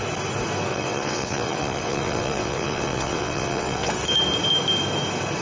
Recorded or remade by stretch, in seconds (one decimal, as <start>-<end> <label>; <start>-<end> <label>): 0.0-0.7 recorded; 0.7-3.9 remade; 3.9-5.4 recorded